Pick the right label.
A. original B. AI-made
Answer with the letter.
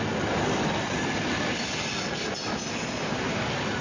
A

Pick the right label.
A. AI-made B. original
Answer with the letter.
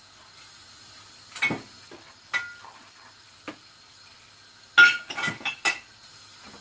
B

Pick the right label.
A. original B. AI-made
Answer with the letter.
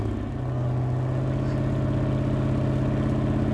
A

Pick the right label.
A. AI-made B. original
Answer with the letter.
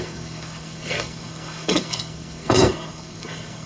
A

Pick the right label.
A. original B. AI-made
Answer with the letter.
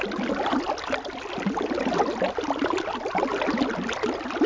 A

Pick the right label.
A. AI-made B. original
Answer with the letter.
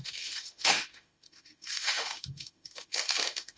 A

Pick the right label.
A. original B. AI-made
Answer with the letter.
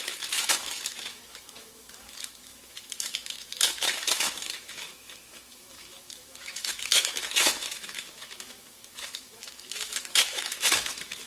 B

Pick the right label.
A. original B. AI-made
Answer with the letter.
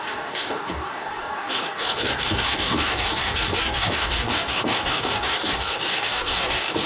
B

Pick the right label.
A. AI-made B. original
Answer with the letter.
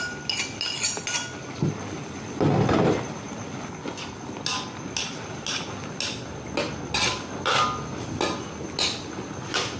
B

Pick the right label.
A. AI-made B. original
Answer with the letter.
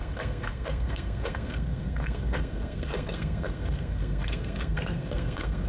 A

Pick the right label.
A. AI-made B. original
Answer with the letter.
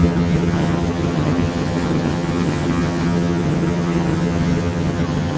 A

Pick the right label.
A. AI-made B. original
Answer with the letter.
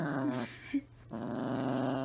A